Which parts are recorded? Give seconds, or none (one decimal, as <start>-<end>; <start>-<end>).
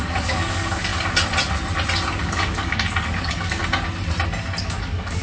0.9-2.2; 3.6-4.6